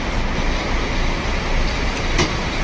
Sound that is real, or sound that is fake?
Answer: real